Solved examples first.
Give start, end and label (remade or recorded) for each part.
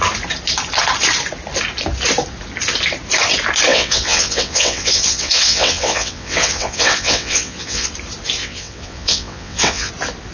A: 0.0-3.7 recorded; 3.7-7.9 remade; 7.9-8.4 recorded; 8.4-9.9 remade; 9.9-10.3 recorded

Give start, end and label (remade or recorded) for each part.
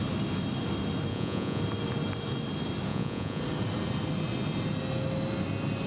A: 0.0-1.1 recorded; 1.1-1.6 remade; 1.6-2.9 recorded; 2.9-3.4 remade; 3.4-5.9 recorded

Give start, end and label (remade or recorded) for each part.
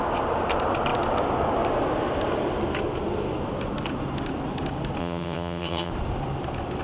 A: 0.0-5.0 recorded; 5.0-5.9 remade; 5.9-6.8 recorded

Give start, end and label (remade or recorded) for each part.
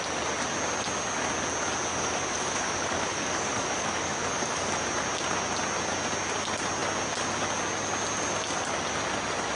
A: 0.0-1.9 recorded; 1.9-4.8 remade; 4.8-9.6 recorded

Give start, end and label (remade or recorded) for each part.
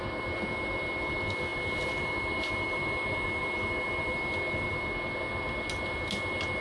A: 0.0-6.6 recorded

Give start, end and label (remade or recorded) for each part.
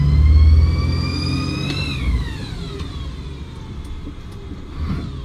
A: 0.0-5.2 recorded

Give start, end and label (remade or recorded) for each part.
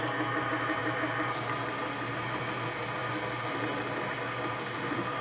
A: 0.0-0.8 recorded; 0.8-2.4 remade; 2.4-3.0 recorded; 3.0-4.1 remade; 4.1-5.2 recorded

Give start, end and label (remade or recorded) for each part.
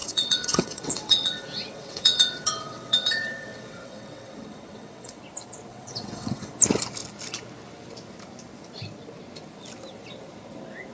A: 0.0-5.2 remade; 5.2-5.7 recorded; 5.7-6.5 remade; 6.5-10.9 recorded